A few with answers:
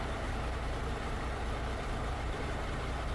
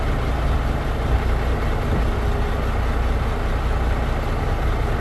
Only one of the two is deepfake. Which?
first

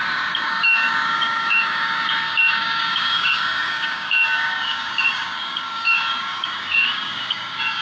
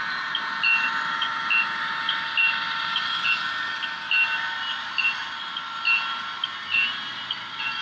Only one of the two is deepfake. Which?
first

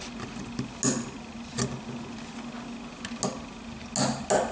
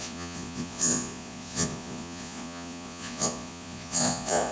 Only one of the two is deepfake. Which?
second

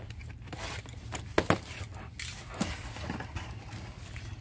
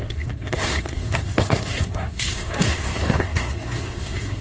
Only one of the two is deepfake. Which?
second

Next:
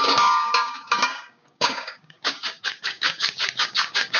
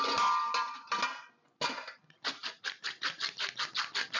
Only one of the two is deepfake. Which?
first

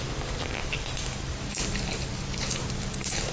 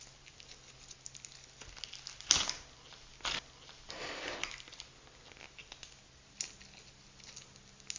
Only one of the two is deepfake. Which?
first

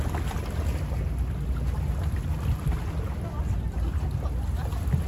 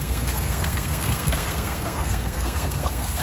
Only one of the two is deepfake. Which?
second